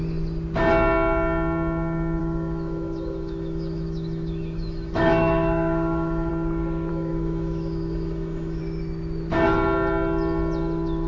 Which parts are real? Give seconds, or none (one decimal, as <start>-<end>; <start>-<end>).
0.0-2.2; 6.3-6.9; 8.6-11.1